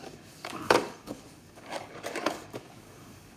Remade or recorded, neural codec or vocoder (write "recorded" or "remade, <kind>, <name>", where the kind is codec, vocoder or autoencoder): remade, codec, DAC